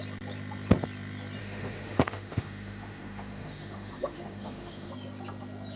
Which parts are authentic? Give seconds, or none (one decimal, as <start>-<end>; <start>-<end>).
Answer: 0.0-1.4; 4.9-5.8